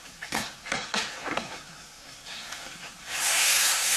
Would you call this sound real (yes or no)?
no